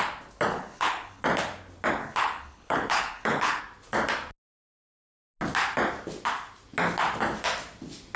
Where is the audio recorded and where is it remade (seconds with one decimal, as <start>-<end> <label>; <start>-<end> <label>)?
0.0-0.5 recorded; 0.5-1.2 remade; 1.2-2.0 recorded; 2.0-3.6 remade; 3.6-8.2 recorded